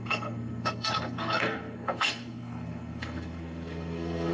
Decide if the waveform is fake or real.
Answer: fake